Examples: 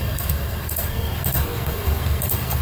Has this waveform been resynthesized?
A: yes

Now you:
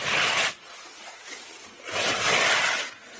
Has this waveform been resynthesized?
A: no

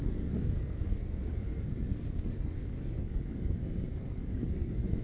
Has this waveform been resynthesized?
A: yes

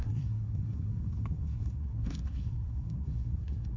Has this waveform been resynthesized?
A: yes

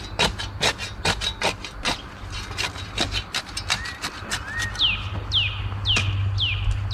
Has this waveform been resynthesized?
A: no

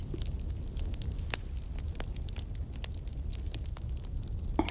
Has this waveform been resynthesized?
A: no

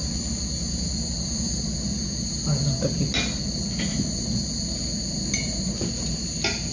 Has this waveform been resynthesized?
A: no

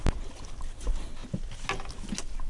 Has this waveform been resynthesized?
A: no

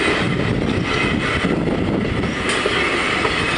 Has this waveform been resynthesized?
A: no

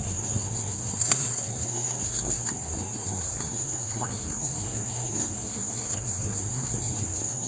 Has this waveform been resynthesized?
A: yes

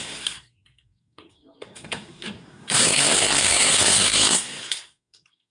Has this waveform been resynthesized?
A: yes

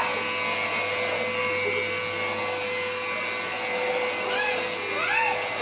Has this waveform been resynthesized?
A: no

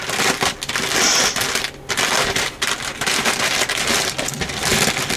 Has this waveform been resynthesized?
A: no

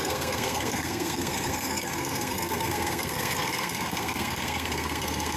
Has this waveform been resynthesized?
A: yes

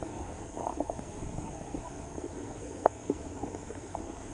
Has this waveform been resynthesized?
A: yes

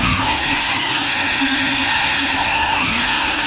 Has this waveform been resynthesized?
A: yes